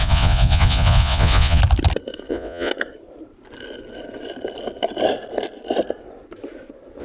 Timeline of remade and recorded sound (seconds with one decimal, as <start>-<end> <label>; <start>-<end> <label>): 0.0-1.6 remade; 1.6-2.3 recorded; 2.3-2.7 remade; 2.7-7.0 recorded